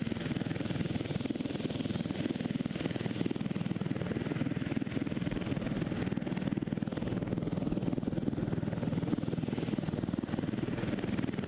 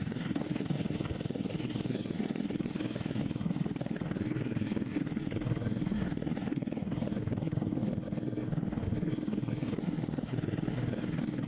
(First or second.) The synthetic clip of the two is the second